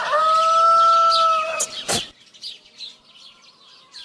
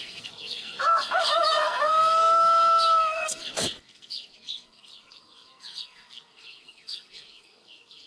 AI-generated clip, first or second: second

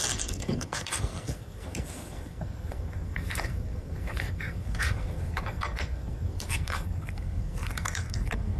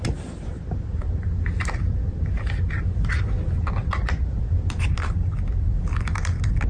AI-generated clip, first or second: first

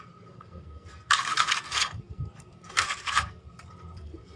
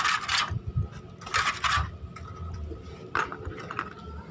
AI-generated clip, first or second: first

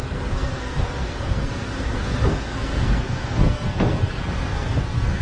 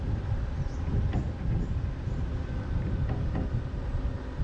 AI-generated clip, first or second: first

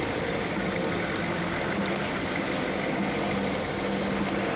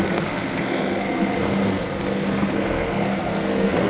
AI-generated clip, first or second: second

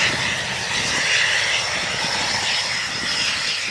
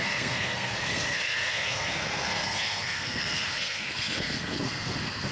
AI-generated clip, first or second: second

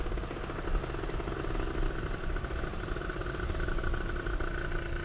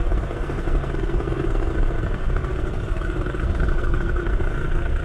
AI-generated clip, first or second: second